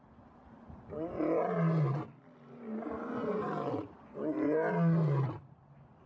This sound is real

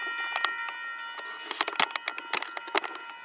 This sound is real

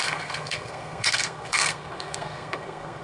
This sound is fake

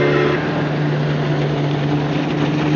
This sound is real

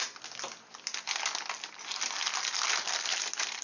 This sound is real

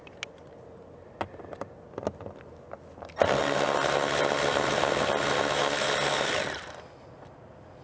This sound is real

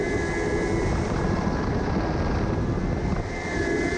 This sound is real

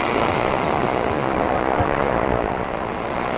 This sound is fake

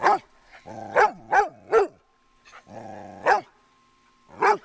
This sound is real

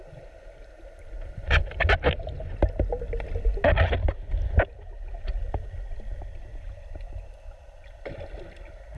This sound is real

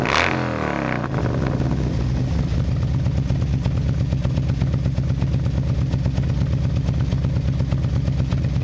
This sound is real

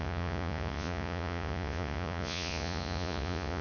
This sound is fake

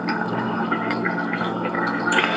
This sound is fake